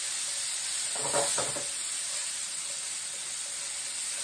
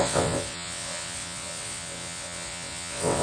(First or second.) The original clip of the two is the first